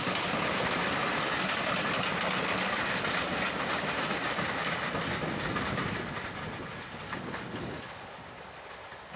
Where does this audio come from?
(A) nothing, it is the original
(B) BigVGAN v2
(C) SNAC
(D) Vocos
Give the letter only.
A